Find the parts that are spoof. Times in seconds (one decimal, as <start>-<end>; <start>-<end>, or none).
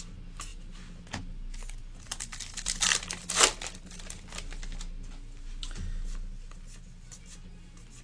none